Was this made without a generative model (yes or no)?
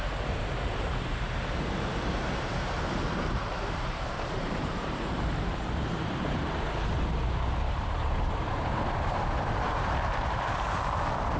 no